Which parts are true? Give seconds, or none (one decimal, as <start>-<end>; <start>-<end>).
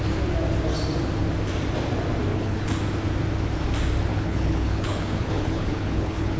0.0-2.3; 2.8-4.1